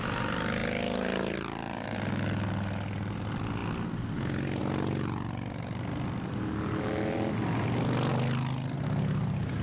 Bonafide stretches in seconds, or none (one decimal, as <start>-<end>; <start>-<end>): 0.0-9.6

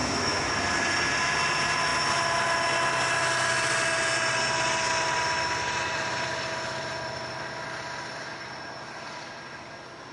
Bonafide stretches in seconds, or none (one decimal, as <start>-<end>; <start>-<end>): 0.5-10.1

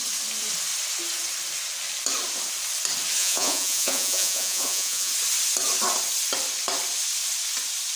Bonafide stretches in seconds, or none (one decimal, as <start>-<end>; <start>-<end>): 0.0-3.2; 5.1-8.0

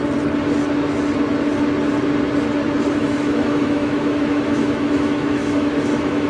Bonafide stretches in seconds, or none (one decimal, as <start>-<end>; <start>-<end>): 0.0-3.0

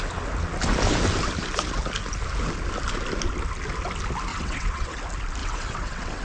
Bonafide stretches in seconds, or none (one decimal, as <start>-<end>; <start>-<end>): 0.0-4.3; 5.0-5.4

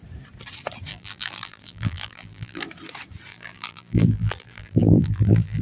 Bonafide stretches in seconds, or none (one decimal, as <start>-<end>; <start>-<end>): 0.0-0.9; 2.6-3.3